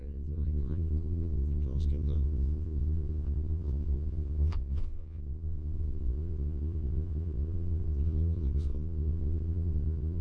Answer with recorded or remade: remade